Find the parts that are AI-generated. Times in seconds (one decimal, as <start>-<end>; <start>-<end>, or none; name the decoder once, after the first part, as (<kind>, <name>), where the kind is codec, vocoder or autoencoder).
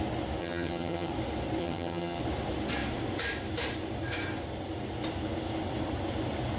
0.4-1.1 (vocoder, HiFi-GAN); 1.6-2.2